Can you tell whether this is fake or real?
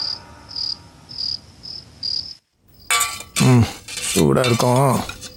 real